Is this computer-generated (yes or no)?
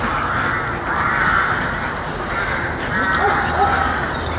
no